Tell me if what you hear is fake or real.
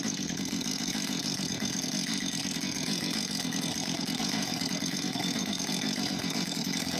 fake